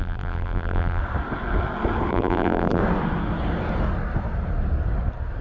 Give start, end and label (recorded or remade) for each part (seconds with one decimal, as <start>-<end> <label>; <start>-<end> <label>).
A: 0.0-1.0 remade; 1.0-2.1 recorded; 2.1-2.8 remade; 2.8-5.4 recorded